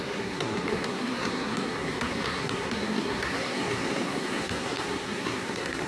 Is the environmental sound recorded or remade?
remade